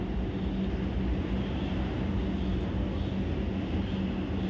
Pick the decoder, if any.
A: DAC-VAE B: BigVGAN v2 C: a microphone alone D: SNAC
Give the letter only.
C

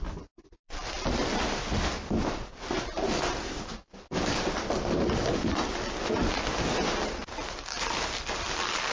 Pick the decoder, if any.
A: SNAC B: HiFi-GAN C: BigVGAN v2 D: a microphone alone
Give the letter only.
C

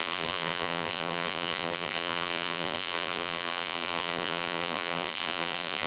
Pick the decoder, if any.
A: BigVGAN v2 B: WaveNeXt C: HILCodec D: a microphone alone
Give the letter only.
A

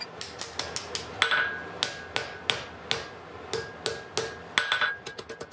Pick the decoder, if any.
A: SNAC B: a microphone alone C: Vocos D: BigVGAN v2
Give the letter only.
B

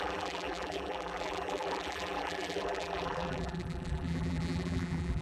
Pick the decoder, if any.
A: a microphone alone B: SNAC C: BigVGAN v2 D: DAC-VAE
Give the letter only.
C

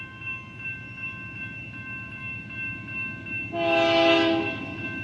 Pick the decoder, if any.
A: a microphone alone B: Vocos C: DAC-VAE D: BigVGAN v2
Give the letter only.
A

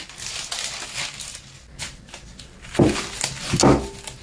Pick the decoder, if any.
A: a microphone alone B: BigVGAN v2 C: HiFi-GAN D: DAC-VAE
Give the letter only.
A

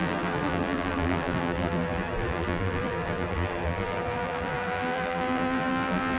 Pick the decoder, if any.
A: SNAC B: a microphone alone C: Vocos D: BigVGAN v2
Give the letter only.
D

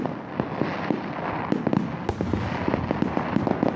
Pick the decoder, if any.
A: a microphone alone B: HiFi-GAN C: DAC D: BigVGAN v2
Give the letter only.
A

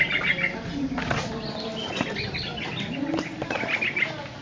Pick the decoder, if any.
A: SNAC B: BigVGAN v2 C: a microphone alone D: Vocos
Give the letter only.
C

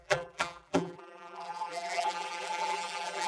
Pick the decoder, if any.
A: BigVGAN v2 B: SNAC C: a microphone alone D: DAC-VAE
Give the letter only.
A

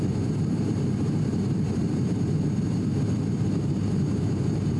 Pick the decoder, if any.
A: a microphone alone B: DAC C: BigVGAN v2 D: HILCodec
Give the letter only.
C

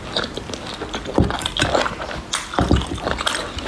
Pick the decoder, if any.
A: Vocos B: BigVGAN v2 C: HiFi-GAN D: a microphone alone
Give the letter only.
B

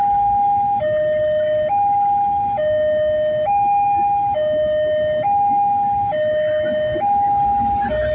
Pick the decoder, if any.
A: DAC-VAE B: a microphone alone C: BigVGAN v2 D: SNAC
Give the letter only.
B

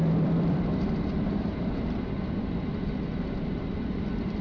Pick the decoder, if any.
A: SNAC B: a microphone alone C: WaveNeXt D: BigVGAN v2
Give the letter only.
D